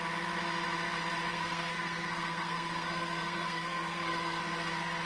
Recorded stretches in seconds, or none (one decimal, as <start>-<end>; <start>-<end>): 0.0-1.3; 4.4-5.1